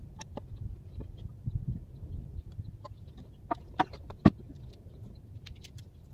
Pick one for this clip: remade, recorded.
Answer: remade